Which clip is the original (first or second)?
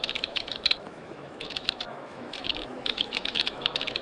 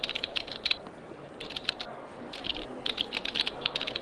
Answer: second